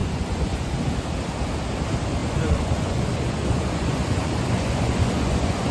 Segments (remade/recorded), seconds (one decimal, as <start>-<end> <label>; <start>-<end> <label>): 0.0-0.7 remade; 0.7-2.2 recorded; 2.2-5.7 remade